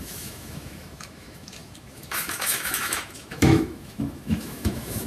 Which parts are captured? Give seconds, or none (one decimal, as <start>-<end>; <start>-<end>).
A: none